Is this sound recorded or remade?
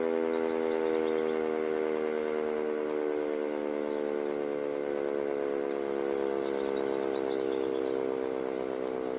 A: recorded